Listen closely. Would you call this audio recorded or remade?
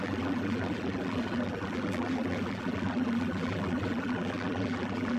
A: remade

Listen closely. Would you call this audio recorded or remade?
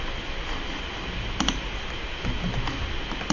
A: recorded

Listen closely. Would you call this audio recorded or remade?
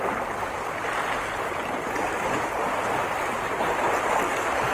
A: recorded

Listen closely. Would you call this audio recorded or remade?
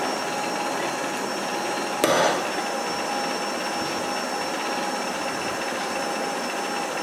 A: recorded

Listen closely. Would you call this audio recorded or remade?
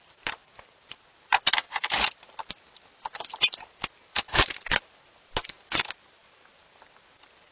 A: recorded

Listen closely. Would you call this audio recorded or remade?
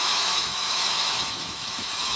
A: remade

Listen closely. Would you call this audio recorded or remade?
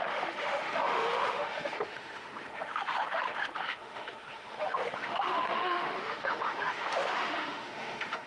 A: remade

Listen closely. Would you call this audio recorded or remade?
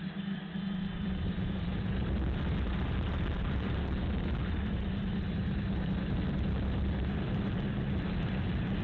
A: remade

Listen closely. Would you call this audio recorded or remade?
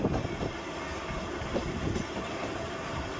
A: recorded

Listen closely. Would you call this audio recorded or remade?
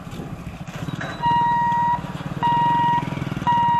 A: remade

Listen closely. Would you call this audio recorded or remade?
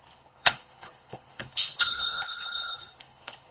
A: remade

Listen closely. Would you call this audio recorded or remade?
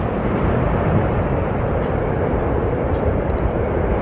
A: remade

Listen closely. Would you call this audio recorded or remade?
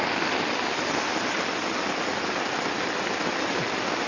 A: recorded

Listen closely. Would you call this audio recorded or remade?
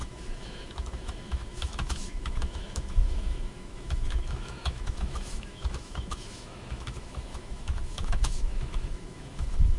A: remade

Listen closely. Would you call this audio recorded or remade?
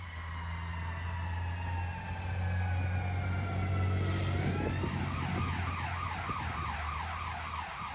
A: recorded